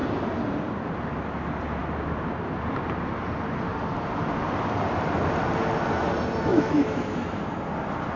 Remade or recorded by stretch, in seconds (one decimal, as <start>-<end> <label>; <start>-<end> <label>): 0.0-6.5 recorded; 6.5-7.4 remade; 7.4-8.2 recorded